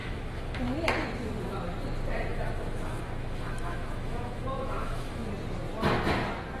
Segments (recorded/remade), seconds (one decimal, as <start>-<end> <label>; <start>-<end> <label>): 0.0-0.6 remade; 0.6-2.3 recorded; 2.3-5.3 remade; 5.3-6.6 recorded